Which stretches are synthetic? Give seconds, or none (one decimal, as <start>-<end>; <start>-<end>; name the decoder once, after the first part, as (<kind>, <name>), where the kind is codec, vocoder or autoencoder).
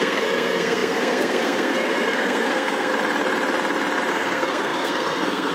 0.0-2.9 (codec, SNAC); 4.1-5.5